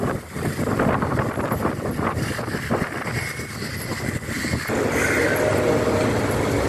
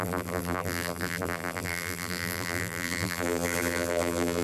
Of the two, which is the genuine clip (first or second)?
first